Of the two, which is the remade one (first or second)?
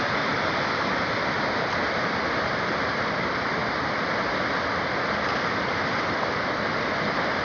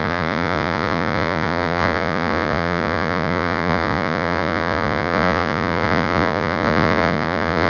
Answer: second